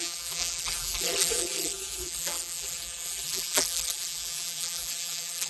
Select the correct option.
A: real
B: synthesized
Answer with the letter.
B